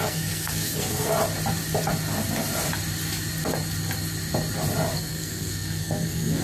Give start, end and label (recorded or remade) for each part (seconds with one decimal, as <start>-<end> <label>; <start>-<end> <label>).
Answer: 0.0-1.1 remade; 1.1-4.9 recorded; 4.9-6.4 remade